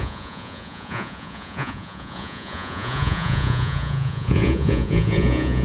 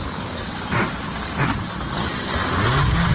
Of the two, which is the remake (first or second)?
first